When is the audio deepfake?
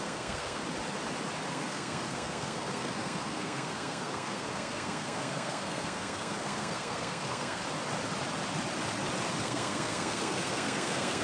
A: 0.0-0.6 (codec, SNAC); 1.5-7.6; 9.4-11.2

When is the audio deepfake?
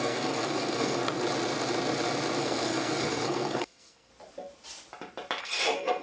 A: 0.0-1.0 (codec, SNAC); 2.4-4.1; 5.4-6.0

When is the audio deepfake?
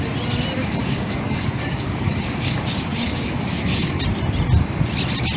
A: 0.8-4.0 (codec, DAC)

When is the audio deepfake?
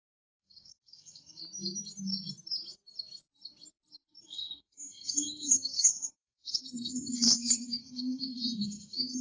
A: 0.0-1.4 (codec, SNAC); 4.3-9.2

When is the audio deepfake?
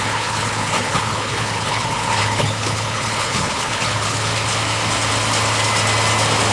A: 0.0-4.3 (codec, HILCodec)